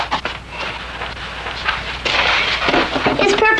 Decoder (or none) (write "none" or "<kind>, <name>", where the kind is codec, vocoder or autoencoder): none